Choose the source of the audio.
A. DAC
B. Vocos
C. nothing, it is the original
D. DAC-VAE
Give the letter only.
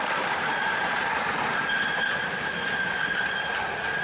C